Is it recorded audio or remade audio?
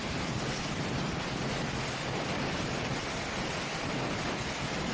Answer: recorded